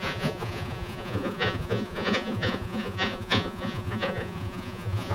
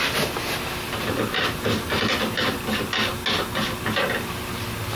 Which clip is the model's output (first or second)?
first